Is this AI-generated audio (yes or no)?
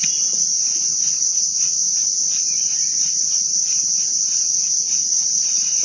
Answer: yes